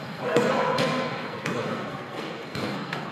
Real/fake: fake